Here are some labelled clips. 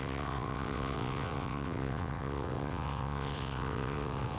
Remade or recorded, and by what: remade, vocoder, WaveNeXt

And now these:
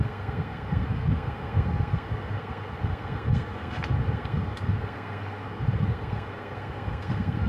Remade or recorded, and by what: remade, codec, SNAC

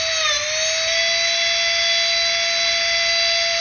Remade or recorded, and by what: recorded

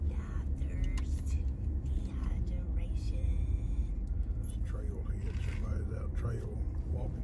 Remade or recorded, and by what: recorded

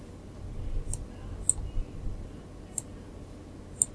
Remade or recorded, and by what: recorded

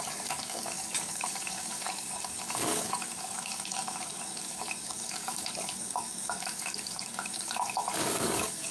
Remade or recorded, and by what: remade, codec, DAC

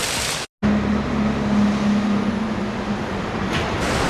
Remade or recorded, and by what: recorded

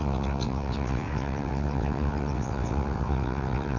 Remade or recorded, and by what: remade, vocoder, WaveNeXt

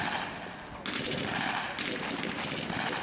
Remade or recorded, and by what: recorded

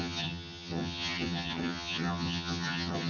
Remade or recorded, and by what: remade, vocoder, HiFi-GAN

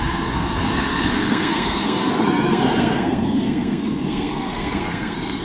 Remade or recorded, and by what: remade, codec, SNAC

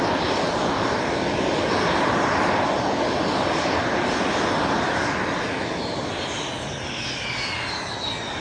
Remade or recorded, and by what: recorded